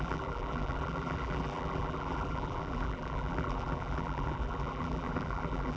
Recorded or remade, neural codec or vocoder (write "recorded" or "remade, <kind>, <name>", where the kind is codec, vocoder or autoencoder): remade, vocoder, BigVGAN v2